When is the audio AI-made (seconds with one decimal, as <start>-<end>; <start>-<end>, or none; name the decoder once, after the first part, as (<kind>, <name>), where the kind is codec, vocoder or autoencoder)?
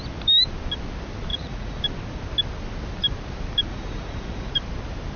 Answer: 1.3-1.8 (vocoder, Vocos); 3.7-4.5